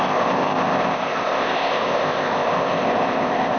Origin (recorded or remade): remade